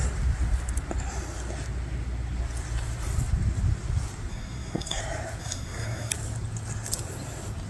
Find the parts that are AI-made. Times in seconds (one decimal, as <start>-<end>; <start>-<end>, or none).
4.3-5.0; 5.4-6.1